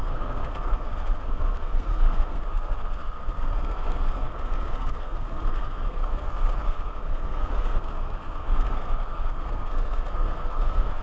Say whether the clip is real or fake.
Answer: fake